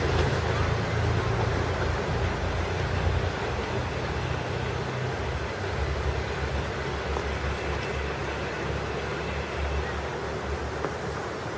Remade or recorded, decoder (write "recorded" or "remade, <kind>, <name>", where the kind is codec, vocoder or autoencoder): recorded